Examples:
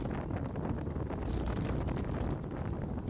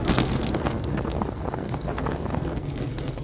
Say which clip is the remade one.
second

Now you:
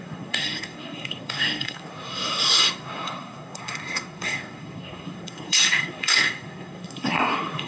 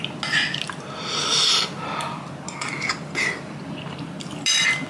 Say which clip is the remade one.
first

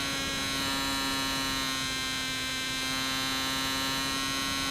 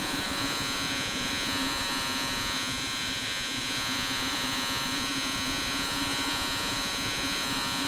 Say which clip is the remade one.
second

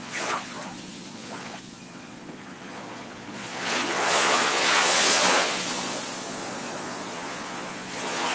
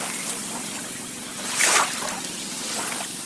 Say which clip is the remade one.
first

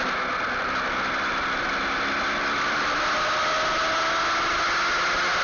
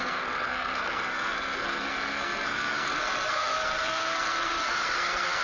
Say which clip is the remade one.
second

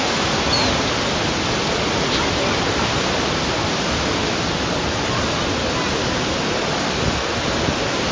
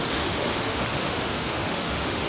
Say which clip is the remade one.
second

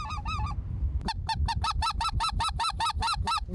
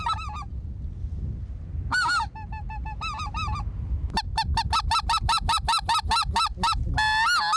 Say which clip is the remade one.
first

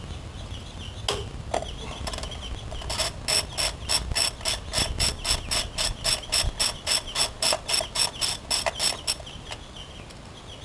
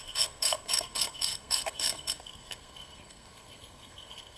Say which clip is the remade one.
second